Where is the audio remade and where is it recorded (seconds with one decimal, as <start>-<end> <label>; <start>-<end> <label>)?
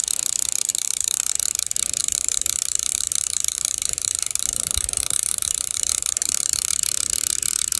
0.0-0.7 recorded; 0.7-1.3 remade; 1.3-2.0 recorded; 2.0-6.7 remade; 6.7-7.8 recorded